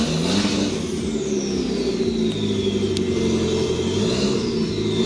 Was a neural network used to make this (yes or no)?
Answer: no